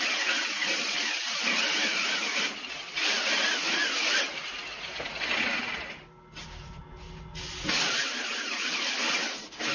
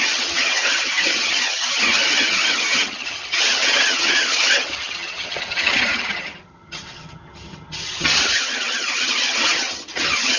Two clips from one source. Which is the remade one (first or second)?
second